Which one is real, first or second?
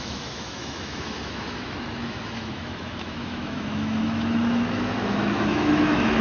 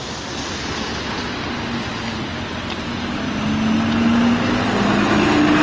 second